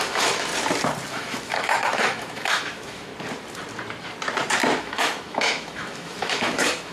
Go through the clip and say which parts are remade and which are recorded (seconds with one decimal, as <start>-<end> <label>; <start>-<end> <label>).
0.0-0.5 remade; 0.5-1.1 recorded; 1.1-3.1 remade; 3.1-4.8 recorded; 4.8-6.9 remade